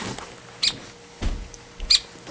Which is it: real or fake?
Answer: real